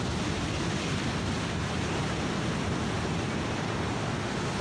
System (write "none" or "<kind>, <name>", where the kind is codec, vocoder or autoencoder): none